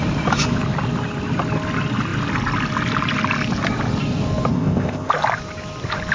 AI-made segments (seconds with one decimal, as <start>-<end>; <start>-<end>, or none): 4.5-5.1